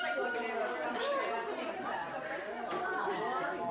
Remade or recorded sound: recorded